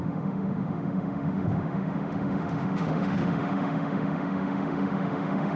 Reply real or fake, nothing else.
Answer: fake